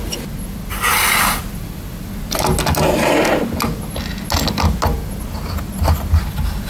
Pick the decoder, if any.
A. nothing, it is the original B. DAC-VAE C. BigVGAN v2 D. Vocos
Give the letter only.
A